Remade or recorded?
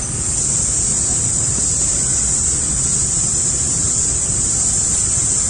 recorded